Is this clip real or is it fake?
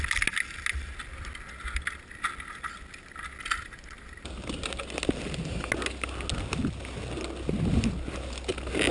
real